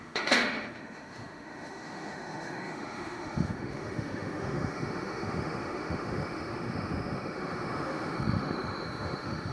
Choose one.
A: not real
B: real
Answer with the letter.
A